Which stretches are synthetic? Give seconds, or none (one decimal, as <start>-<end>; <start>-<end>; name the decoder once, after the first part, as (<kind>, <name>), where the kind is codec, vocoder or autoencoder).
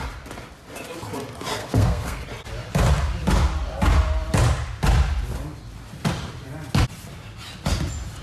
1.6-2.2 (codec, SNAC)